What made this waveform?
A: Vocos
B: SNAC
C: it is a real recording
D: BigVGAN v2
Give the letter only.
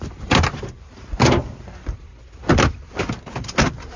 C